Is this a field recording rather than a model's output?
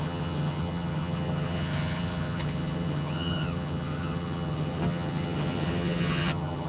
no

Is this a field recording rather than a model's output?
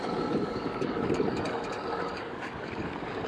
no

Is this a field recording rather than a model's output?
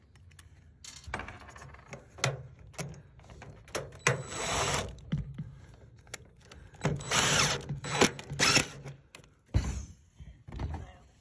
yes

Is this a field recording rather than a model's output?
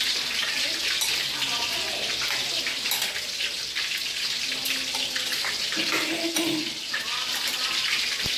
yes